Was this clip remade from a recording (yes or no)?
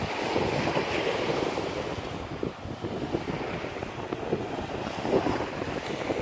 no